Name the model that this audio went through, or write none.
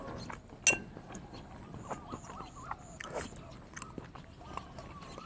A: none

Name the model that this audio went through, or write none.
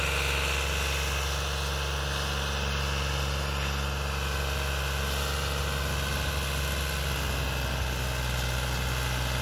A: none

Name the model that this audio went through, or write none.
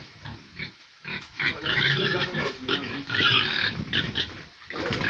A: autoencoder, DAC-VAE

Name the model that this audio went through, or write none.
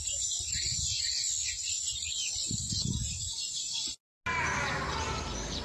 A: none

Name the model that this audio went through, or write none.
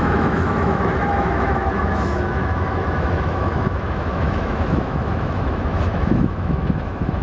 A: autoencoder, DAC-VAE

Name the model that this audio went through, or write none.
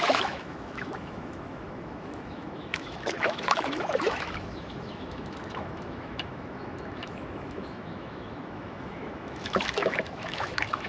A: autoencoder, DAC-VAE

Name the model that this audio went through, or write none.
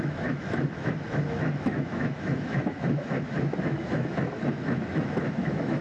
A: autoencoder, DAC-VAE